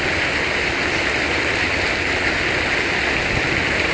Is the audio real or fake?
real